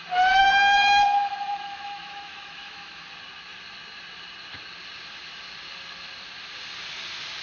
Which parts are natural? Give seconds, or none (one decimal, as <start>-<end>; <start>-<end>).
0.0-0.4; 3.1-7.4

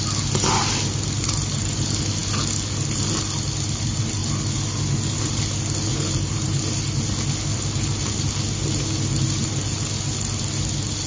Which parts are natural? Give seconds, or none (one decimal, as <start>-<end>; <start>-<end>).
0.0-5.9; 6.6-11.1